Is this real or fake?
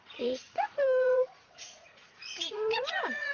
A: fake